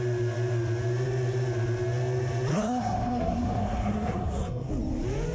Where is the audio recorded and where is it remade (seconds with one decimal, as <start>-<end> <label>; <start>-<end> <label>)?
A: 0.0-2.5 recorded; 2.5-4.7 remade; 4.7-5.3 recorded